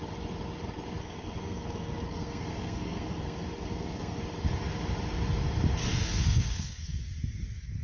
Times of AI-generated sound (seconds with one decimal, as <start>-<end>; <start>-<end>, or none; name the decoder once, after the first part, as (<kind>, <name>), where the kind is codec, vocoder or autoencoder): 1.0-4.2 (codec, SNAC); 5.9-7.0